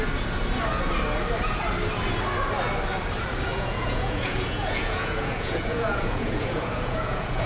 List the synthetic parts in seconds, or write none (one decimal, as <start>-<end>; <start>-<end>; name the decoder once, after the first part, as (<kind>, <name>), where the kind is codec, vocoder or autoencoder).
3.5-7.5 (vocoder, Vocos)

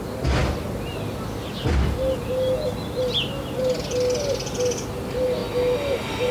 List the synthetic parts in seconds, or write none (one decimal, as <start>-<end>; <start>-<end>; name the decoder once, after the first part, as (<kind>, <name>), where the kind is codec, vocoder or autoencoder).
none

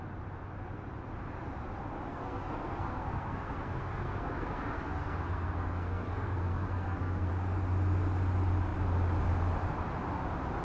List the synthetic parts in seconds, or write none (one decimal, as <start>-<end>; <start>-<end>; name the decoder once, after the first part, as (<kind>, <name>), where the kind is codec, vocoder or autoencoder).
2.1-7.3 (codec, SNAC)

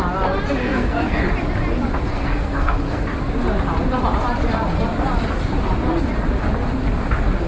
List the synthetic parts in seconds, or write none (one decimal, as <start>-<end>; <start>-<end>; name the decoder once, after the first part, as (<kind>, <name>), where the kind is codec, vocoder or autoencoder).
0.6-1.3 (codec, SNAC); 2.1-3.0

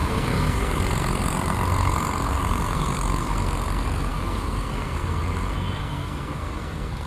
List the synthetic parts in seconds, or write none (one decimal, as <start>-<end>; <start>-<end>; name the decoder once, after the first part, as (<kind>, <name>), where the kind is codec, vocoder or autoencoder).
0.0-7.1 (codec, SNAC)

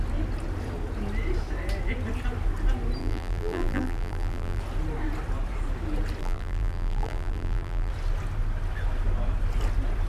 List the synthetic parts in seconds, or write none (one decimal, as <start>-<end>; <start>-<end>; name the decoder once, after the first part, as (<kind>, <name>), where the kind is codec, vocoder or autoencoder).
3.0-4.6 (vocoder, BigVGAN v2); 6.2-7.9

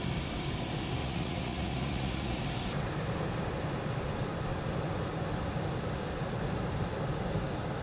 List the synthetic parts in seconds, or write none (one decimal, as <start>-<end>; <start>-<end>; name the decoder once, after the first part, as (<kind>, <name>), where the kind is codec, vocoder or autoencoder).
1.0-2.4 (vocoder, Vocos)